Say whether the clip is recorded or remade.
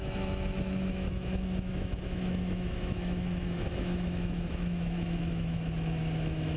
remade